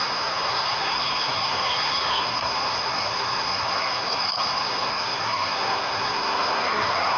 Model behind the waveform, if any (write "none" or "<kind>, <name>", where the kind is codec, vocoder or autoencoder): codec, SNAC